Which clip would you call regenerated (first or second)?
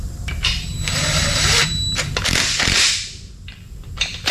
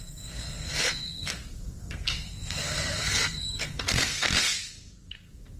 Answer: second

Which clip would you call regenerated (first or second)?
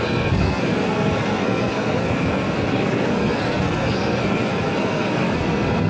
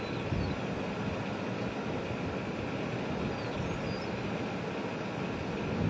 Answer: first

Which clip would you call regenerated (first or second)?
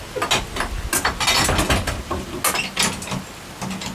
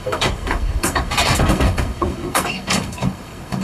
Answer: second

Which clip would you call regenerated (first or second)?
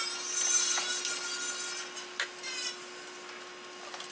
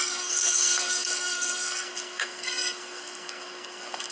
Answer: second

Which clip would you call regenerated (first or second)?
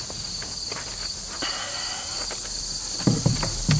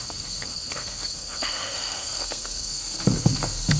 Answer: second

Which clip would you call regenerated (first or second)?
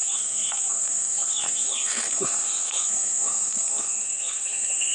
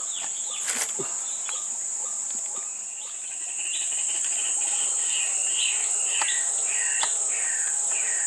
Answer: first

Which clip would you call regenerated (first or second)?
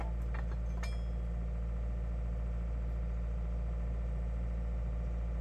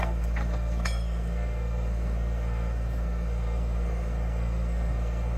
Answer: second